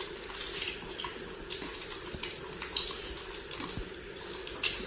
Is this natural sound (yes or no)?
yes